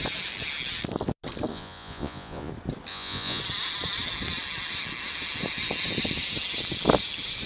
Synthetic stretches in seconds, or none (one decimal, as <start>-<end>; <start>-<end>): 1.5-2.5; 2.9-3.4